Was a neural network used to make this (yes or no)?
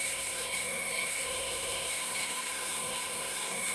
yes